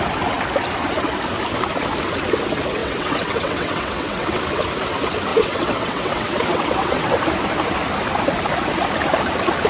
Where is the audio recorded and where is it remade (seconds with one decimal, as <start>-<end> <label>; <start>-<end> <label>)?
0.0-2.8 recorded; 2.8-4.4 remade; 4.4-5.3 recorded; 5.3-7.2 remade; 7.2-9.7 recorded